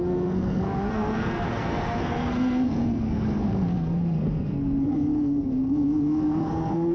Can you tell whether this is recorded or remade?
remade